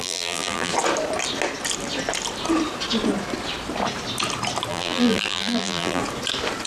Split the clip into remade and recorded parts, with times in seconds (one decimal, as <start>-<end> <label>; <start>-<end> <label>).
0.0-0.7 remade; 0.7-4.7 recorded; 4.7-6.0 remade; 6.0-6.7 recorded